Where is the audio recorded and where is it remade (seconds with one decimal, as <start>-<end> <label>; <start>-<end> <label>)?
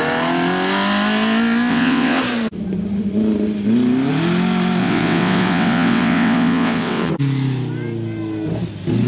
0.0-1.7 recorded; 1.7-2.2 remade; 2.2-4.8 recorded; 4.8-7.1 remade; 7.1-9.1 recorded